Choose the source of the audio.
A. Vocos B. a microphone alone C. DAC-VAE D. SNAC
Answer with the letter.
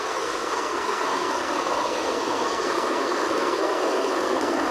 D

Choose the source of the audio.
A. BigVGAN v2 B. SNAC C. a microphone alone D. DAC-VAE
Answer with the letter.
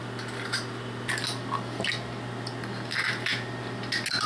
C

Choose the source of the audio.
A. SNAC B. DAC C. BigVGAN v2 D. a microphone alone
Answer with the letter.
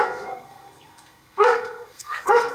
A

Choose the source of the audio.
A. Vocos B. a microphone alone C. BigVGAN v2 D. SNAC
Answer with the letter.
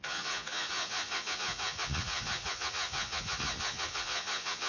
A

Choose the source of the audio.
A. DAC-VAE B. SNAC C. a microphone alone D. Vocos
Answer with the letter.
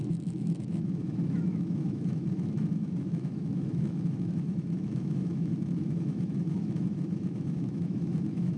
A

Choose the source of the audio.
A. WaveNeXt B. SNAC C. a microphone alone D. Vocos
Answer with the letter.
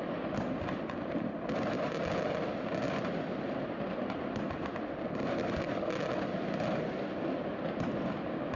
C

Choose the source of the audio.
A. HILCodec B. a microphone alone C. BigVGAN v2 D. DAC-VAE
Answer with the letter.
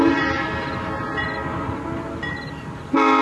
B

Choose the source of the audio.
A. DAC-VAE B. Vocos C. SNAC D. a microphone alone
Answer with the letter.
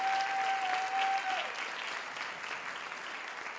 D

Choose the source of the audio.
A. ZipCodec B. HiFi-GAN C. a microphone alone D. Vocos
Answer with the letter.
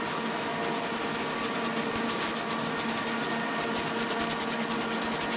C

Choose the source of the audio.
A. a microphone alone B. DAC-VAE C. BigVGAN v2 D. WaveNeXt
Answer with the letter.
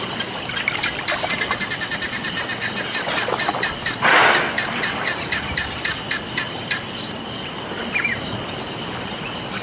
A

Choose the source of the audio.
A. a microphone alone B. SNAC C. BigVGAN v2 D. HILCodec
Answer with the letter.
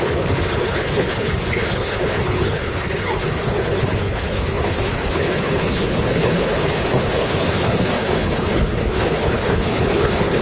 D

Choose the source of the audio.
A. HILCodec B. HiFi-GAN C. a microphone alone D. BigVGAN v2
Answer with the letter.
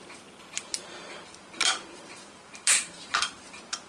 D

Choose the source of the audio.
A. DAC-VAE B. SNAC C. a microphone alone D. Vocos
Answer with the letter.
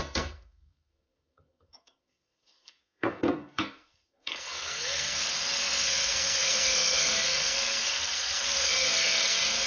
B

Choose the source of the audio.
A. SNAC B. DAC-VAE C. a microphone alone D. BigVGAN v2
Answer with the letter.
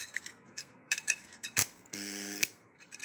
A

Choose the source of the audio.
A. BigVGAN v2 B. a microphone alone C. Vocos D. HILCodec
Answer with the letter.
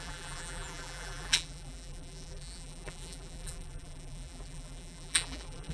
A